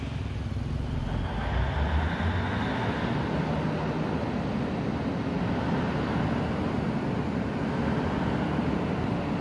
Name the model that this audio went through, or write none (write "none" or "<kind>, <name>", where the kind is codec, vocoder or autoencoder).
none